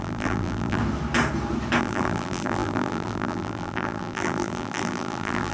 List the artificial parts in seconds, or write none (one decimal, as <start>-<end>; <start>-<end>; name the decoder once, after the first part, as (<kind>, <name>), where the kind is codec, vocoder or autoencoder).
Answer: 0.0-0.8 (vocoder, BigVGAN v2); 1.8-5.5